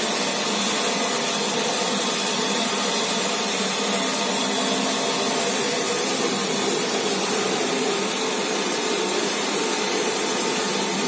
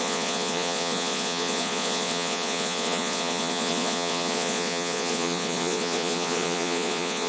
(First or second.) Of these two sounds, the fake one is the second